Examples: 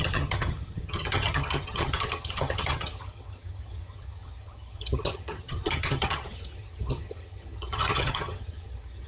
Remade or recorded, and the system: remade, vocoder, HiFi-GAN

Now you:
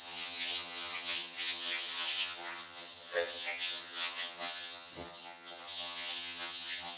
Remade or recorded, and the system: remade, vocoder, HiFi-GAN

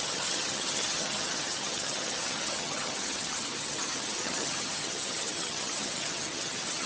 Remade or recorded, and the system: remade, vocoder, HiFi-GAN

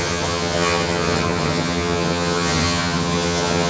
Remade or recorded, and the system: remade, vocoder, HiFi-GAN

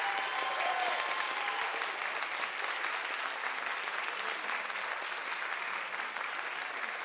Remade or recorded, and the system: recorded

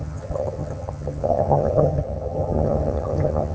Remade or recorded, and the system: remade, vocoder, HiFi-GAN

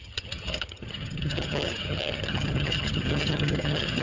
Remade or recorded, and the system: remade, vocoder, HiFi-GAN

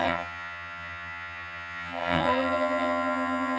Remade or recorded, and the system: remade, vocoder, HiFi-GAN